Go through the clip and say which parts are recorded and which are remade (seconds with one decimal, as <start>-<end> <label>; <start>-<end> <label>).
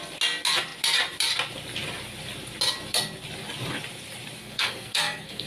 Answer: 0.0-4.4 recorded; 4.4-5.5 remade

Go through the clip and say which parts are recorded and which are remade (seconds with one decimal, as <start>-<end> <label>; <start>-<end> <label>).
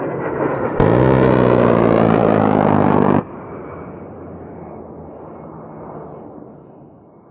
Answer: 0.0-7.3 recorded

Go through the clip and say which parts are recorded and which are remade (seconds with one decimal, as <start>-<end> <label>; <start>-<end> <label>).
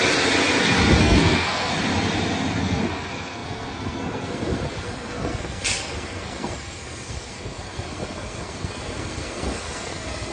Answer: 0.0-1.0 recorded; 1.0-1.7 remade; 1.7-2.6 recorded; 2.6-10.3 remade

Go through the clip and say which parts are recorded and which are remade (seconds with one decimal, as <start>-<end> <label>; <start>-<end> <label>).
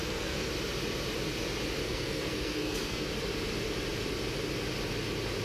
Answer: 0.0-0.5 remade; 0.5-1.8 recorded; 1.8-3.0 remade; 3.0-5.4 recorded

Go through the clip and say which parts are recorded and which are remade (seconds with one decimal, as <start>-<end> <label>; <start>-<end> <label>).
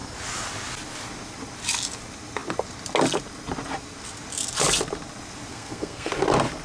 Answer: 0.0-5.5 recorded; 5.5-6.1 remade; 6.1-6.6 recorded